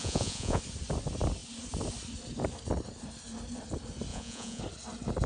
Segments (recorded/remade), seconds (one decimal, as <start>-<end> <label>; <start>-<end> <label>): 0.0-0.6 remade; 0.6-4.1 recorded; 4.1-4.6 remade; 4.6-5.3 recorded